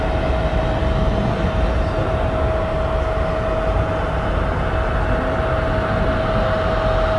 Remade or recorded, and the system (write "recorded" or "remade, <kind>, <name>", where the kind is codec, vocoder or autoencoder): recorded